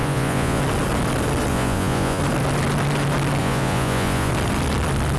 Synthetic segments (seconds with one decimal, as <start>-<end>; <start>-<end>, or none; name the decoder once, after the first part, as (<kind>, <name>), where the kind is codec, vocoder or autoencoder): 0.0-0.6 (vocoder, Vocos); 1.5-2.2; 3.4-4.3